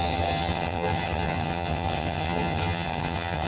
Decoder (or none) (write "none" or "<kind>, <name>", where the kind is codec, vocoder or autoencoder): vocoder, HiFi-GAN